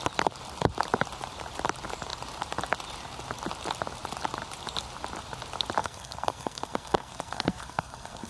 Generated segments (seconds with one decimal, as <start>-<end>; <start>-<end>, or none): 5.8-8.3